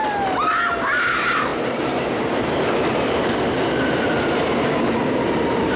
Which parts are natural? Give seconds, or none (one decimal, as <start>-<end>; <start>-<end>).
0.0-5.8